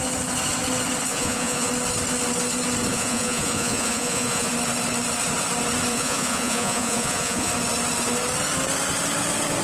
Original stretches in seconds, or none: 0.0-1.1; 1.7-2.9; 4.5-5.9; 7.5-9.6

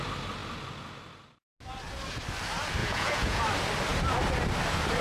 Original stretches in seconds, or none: 0.0-2.8; 3.4-5.0

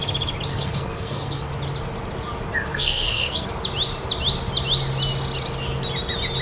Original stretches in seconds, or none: 0.0-0.5; 1.5-2.7; 3.5-6.4

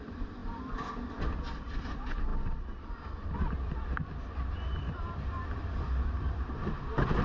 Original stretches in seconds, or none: 0.4-1.1; 2.3-5.3

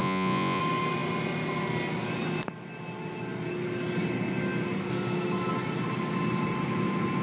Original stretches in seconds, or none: 0.6-7.2

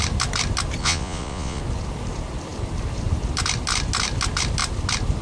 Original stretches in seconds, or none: 0.0-0.8; 1.6-5.2

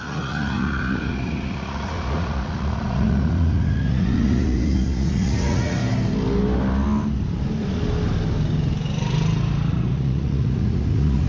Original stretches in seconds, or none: 5.8-9.7

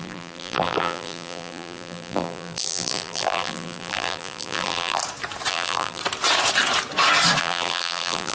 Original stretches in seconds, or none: 5.0-5.5; 6.0-7.4